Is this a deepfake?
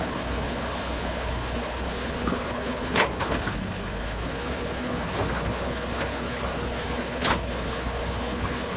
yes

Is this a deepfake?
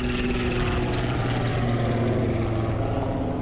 no